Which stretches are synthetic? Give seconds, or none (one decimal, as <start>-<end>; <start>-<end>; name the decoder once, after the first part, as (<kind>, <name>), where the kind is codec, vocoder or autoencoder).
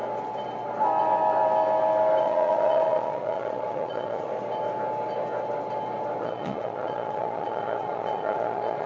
2.2-4.3 (vocoder, Vocos); 6.2-8.9